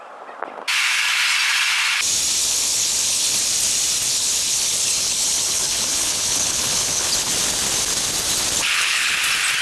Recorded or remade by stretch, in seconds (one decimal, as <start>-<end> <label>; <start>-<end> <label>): 0.0-2.4 recorded; 2.4-3.5 remade; 3.5-4.1 recorded; 4.1-7.3 remade; 7.3-8.6 recorded; 8.6-9.2 remade; 9.2-9.6 recorded